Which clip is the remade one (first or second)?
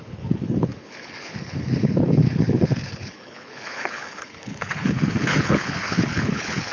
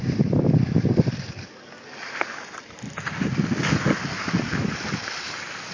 first